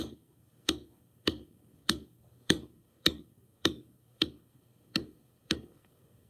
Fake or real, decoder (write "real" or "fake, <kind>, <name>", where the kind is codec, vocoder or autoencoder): fake, codec, SNAC